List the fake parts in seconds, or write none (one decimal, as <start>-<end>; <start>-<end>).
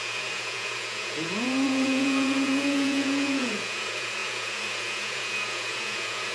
0.0-6.3